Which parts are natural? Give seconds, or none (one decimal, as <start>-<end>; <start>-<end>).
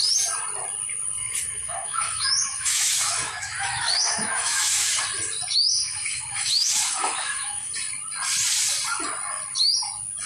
0.0-1.2; 5.0-5.8; 7.7-10.3